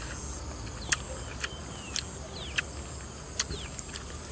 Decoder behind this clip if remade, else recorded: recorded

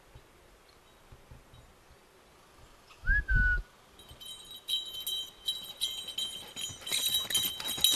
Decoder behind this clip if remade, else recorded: recorded